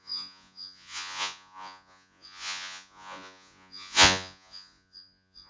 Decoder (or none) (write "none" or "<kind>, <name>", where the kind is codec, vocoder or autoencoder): vocoder, Vocos